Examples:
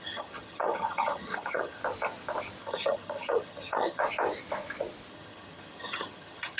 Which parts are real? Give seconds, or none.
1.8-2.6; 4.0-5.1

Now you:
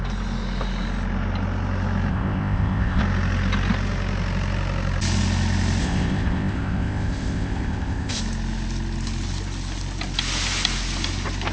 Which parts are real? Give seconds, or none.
0.0-2.1; 3.0-5.8; 8.2-11.5

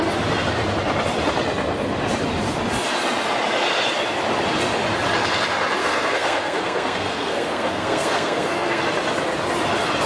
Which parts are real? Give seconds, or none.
0.0-5.8; 8.8-10.1

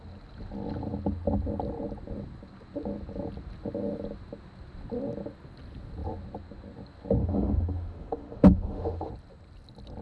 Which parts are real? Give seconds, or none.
0.0-7.2; 9.1-10.0

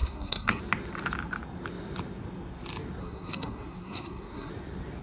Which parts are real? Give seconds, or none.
0.6-3.0; 4.5-5.0

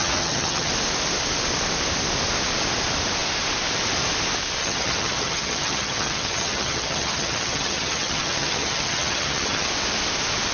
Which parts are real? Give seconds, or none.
0.7-4.6; 9.7-10.5

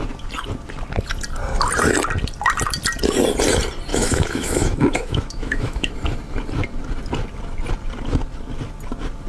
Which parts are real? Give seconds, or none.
0.0-3.9; 5.9-9.3

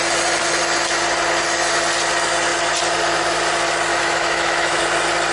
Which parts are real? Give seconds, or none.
0.0-3.9; 4.8-5.3